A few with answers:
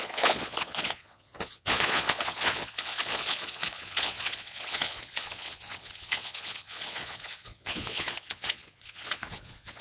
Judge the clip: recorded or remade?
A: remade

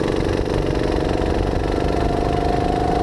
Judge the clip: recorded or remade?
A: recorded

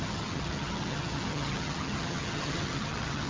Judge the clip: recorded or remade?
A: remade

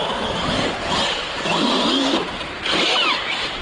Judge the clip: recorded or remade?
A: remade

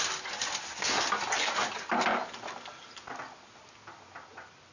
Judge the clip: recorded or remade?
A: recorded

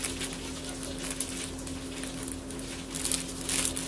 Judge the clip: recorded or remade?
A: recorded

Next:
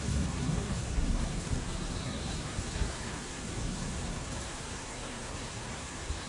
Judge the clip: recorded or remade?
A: remade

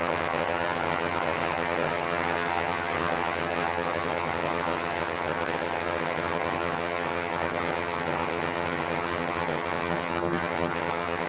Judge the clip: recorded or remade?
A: remade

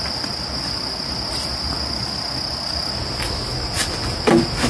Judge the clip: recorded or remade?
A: recorded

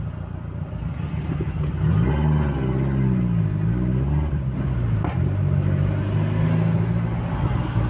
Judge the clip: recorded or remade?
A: recorded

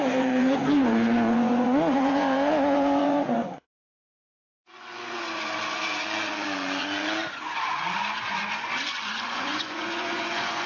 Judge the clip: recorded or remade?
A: remade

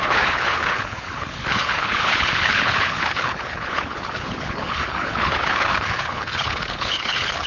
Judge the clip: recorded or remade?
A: remade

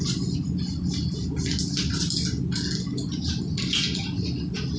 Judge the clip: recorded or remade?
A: recorded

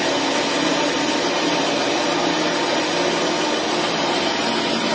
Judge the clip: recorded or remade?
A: recorded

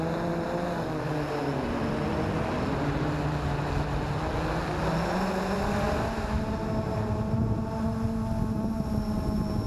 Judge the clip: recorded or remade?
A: recorded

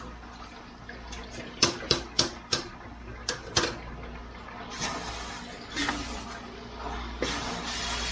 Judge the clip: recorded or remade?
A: recorded